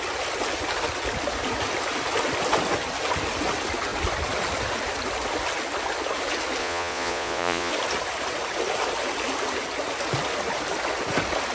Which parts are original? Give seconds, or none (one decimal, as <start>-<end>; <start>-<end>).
0.0-6.6; 7.7-11.5